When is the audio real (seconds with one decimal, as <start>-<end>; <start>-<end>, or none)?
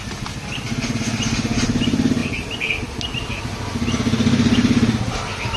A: 0.0-5.6